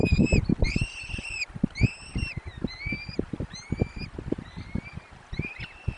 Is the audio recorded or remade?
recorded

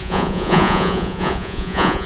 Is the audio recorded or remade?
remade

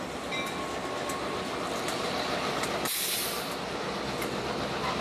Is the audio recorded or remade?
recorded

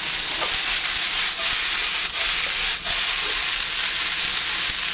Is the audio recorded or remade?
recorded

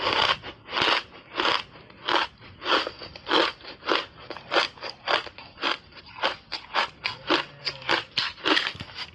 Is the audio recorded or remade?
recorded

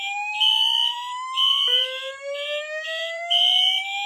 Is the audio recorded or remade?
remade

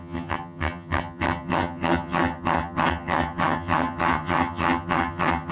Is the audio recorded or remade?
remade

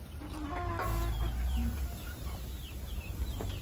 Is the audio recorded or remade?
recorded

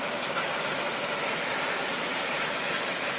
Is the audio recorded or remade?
remade